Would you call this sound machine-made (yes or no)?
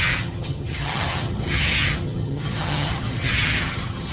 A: yes